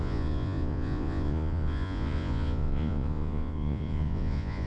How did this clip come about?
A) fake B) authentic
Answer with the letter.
A